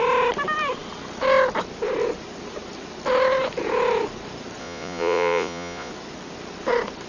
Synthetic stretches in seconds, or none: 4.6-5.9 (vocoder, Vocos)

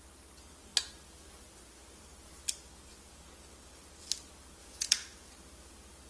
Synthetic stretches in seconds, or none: 4.6-5.3 (vocoder, Vocos)

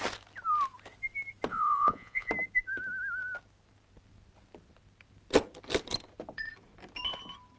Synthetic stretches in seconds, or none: 1.5-2.3 (vocoder, Vocos)

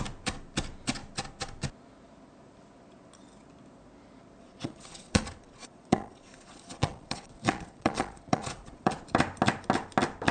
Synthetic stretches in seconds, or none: 4.4-8.9 (vocoder, Vocos)